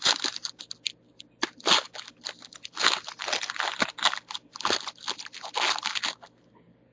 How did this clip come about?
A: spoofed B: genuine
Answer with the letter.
B